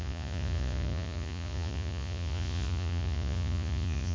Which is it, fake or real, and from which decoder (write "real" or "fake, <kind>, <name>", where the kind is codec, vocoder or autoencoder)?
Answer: fake, vocoder, Vocos